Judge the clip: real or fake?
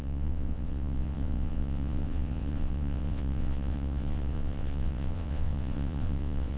fake